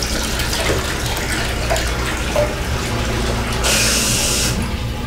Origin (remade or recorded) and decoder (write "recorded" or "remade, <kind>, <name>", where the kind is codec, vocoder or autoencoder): recorded